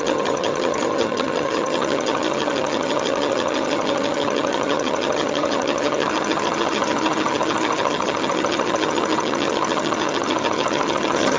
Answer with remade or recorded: remade